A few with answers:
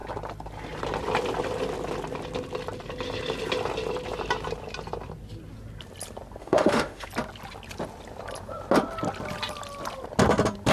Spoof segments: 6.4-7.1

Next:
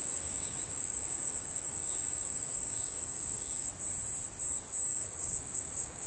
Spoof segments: 0.0-3.7; 4.9-6.1